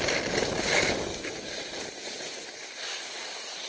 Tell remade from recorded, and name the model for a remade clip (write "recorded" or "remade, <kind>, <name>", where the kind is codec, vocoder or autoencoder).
recorded